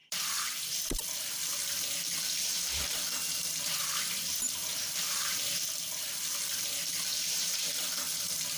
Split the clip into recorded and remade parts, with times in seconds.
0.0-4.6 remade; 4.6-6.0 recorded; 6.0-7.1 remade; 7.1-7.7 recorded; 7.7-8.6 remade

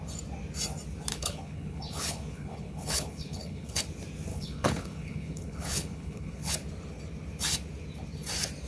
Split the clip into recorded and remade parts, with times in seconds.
0.0-1.1 recorded; 1.1-3.8 remade; 3.8-4.3 recorded; 4.3-6.5 remade; 6.5-8.7 recorded

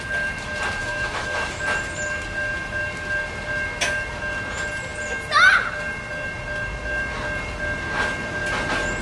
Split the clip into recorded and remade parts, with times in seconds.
0.0-0.8 recorded; 0.8-1.6 remade; 1.6-9.0 recorded

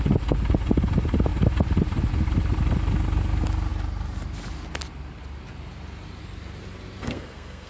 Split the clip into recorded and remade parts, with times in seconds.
0.0-7.0 recorded; 7.0-7.7 remade

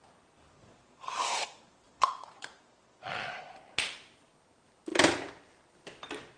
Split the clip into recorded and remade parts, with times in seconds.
0.0-0.5 recorded; 0.5-3.5 remade; 3.5-6.4 recorded

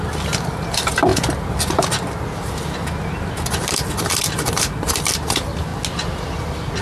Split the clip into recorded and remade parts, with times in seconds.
0.0-1.1 remade; 1.1-3.9 recorded; 3.9-5.7 remade; 5.7-6.8 recorded

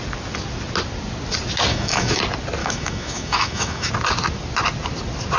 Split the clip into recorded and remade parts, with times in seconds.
0.0-1.7 recorded; 1.7-2.2 remade; 2.2-2.6 recorded; 2.6-3.9 remade; 3.9-5.4 recorded